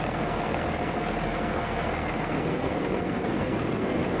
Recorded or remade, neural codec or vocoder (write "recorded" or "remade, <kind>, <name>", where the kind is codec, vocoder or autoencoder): remade, codec, SNAC